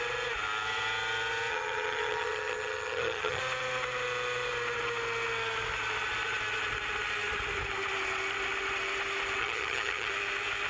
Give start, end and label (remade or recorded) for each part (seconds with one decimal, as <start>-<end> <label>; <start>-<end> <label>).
0.0-1.5 recorded; 1.5-3.4 remade; 3.4-9.4 recorded; 9.4-10.1 remade; 10.1-10.7 recorded